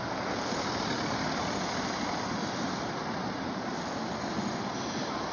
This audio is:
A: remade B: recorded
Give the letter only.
B